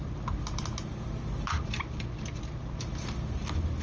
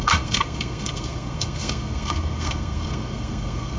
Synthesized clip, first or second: second